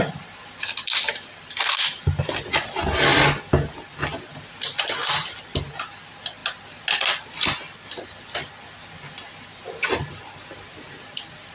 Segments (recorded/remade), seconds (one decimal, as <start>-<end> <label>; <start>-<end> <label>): 0.0-11.5 recorded